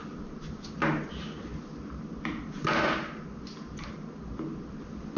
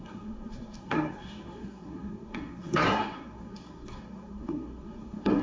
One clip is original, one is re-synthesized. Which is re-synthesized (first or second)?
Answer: second